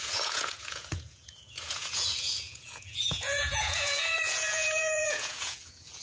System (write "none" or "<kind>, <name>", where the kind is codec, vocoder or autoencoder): vocoder, Vocos